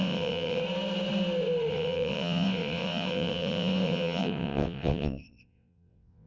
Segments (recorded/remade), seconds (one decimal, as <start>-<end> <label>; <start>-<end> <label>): 0.0-0.6 remade; 0.6-1.7 recorded; 1.7-6.3 remade